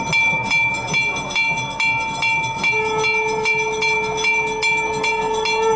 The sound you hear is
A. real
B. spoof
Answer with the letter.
A